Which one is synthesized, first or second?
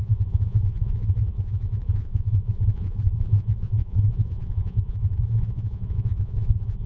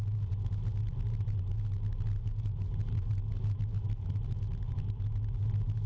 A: first